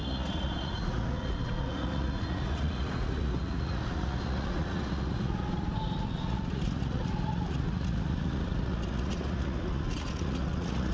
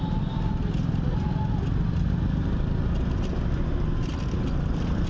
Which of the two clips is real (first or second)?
second